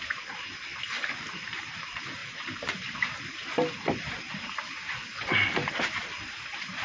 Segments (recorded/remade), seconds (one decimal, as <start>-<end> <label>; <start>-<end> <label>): 0.0-6.8 remade